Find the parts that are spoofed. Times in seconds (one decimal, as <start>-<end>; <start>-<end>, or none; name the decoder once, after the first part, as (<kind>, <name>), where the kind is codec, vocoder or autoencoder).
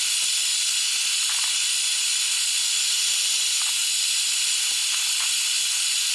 0.5-2.2 (vocoder, BigVGAN v2); 3.8-4.3